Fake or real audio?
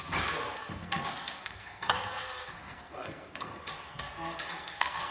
fake